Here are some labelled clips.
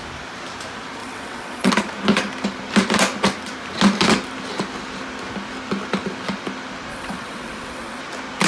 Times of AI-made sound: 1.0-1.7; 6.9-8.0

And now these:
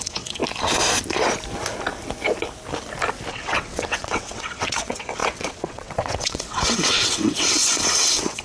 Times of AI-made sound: 0.0-0.4; 3.3-8.4